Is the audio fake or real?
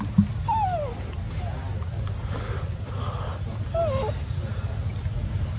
real